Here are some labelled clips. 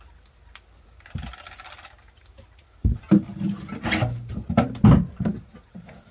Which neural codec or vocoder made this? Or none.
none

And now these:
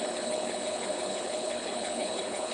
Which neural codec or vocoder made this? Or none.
codec, HILCodec